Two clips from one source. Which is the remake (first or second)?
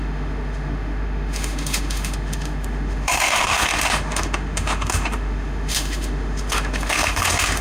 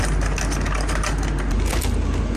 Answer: first